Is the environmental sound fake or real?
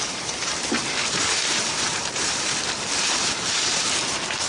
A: fake